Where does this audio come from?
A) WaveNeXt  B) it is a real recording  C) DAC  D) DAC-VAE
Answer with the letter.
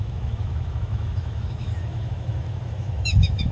D